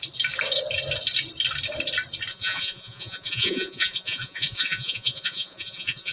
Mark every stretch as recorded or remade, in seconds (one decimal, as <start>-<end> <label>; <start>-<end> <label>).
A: 0.0-2.3 recorded; 2.3-6.1 remade